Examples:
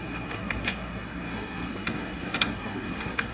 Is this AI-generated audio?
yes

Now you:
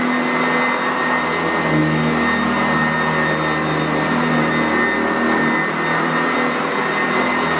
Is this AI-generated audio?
no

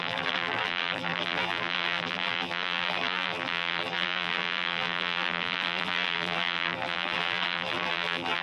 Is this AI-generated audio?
yes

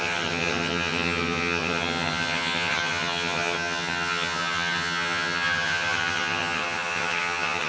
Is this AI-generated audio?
yes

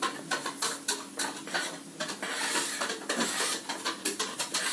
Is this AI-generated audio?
no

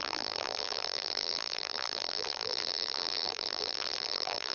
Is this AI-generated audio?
yes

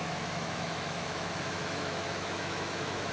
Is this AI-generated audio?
yes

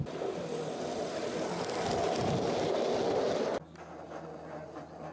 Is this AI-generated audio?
no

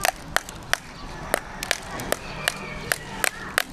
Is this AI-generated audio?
no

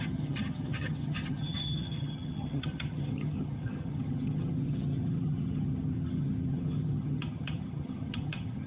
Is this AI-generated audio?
yes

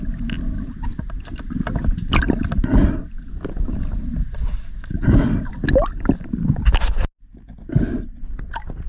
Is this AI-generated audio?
no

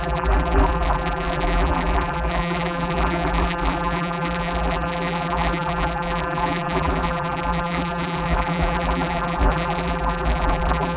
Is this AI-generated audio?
yes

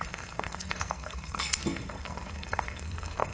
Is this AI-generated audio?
yes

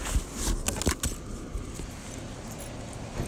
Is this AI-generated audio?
no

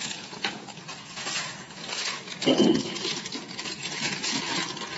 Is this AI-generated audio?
yes